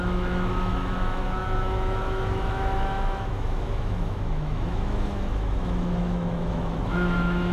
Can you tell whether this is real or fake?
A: fake